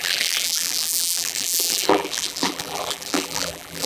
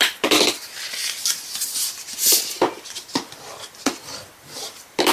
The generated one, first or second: first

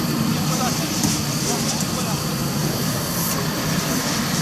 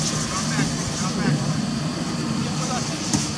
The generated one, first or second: first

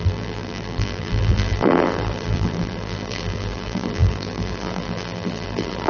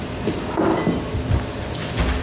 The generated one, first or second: first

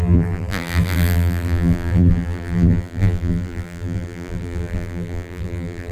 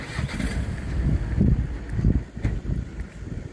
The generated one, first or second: first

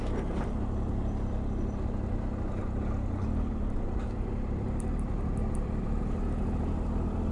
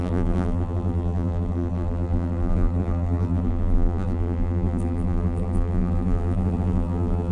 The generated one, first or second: second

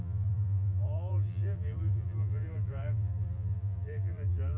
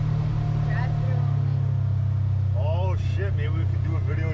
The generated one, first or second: first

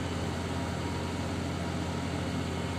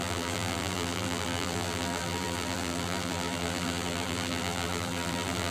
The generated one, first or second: second